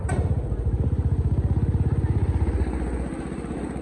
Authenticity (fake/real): real